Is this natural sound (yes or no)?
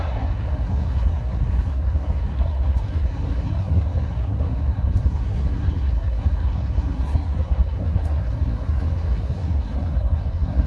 no